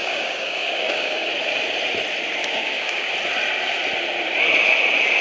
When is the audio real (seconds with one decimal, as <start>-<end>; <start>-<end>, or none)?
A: 1.3-2.4; 3.1-5.2